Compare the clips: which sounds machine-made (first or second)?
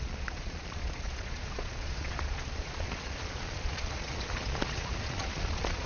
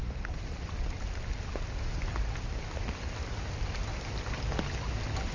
first